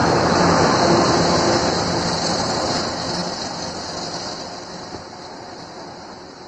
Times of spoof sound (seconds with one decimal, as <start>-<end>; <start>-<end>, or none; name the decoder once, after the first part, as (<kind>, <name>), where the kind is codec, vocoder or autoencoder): none